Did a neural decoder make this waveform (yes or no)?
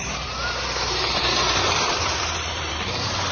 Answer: yes